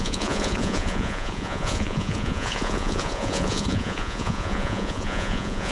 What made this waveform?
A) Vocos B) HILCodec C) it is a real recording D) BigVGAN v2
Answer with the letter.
A